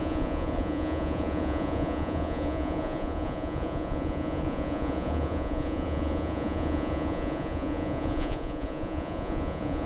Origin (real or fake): fake